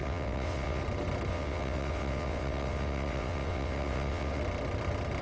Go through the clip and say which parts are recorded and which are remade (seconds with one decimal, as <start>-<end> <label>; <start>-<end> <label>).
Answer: 0.0-0.8 remade; 0.8-1.3 recorded; 1.3-4.4 remade; 4.4-5.2 recorded